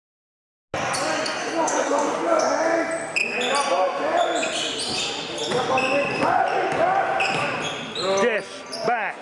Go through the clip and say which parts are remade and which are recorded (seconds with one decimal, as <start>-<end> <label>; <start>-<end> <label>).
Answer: 0.0-1.4 recorded; 1.4-2.4 remade; 2.4-9.2 recorded